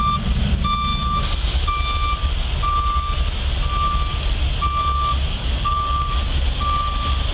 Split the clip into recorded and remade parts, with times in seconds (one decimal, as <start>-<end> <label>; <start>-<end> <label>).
0.0-5.3 recorded; 5.3-6.1 remade; 6.1-7.3 recorded